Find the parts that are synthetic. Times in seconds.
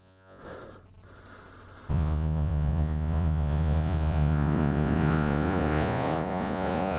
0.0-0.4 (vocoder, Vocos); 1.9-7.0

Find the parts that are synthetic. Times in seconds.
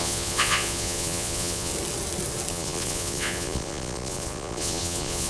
0.0-1.7 (vocoder, Vocos); 2.5-5.3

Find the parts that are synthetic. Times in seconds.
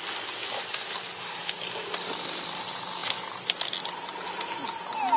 none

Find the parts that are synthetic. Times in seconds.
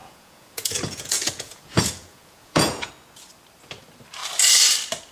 0.0-2.9 (vocoder, Vocos)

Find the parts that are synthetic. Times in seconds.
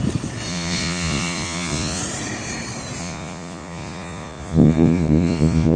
0.5-2.0 (vocoder, Vocos); 3.0-5.8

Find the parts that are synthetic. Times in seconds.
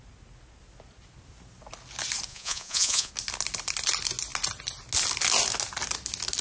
2.3-3.1 (vocoder, Vocos)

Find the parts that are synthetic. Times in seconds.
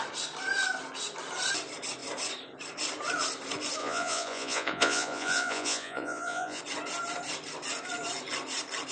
3.8-6.6 (vocoder, Vocos)